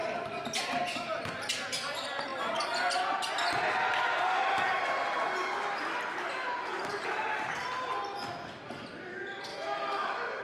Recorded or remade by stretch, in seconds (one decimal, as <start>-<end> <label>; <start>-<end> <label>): 0.0-9.5 recorded; 9.5-10.4 remade